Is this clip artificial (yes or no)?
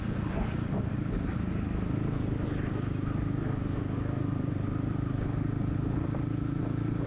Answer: no